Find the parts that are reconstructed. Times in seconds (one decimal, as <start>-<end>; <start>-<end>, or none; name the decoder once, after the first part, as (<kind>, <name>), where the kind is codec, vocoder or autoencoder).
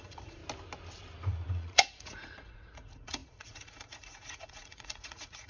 0.0-0.4 (vocoder, Vocos); 1.5-5.5